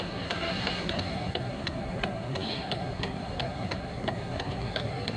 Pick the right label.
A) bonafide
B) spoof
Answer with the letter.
B